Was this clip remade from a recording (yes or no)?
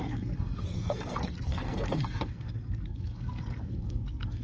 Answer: yes